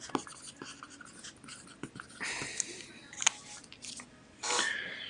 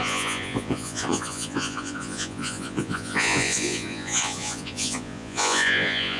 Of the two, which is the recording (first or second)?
first